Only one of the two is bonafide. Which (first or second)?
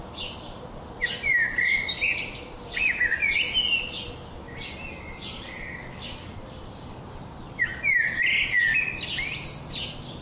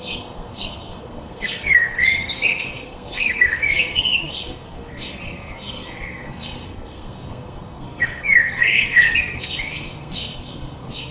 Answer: first